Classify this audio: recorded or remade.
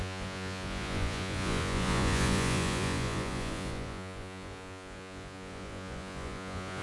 remade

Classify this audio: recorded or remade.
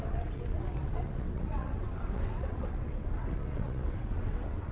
remade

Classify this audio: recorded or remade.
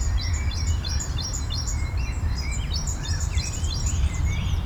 remade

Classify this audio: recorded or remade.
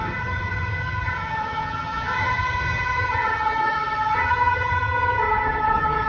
remade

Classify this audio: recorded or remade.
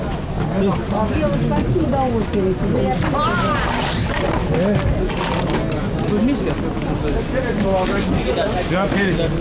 recorded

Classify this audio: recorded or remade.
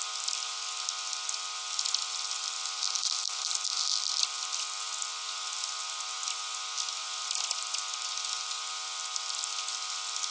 recorded